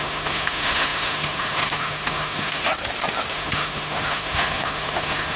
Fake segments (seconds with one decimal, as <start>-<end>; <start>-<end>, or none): 0.0-2.7; 3.3-5.4